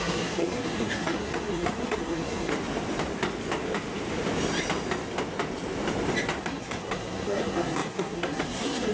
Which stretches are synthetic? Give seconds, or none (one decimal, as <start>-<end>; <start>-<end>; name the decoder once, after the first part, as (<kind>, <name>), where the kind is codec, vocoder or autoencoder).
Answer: 0.0-2.5 (codec, SNAC); 6.4-8.9